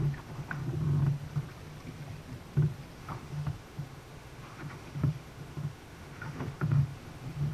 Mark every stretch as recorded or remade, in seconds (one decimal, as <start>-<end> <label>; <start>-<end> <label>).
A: 0.0-0.6 remade; 0.6-3.0 recorded; 3.0-7.5 remade